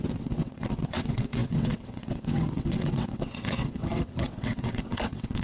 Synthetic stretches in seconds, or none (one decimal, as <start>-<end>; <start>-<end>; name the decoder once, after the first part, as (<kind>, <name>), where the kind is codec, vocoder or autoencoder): 0.0-5.4 (vocoder, WaveNeXt)